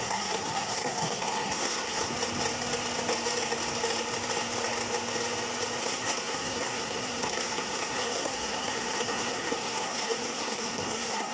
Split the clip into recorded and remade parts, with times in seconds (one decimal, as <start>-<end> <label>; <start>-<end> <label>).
0.0-2.1 remade; 2.1-5.8 recorded; 5.8-11.3 remade